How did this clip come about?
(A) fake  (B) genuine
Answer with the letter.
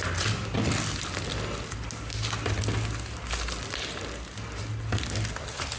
B